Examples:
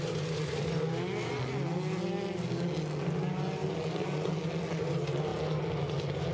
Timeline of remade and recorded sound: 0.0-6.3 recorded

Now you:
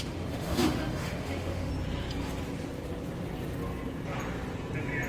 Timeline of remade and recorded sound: 0.0-1.7 remade; 1.7-5.1 recorded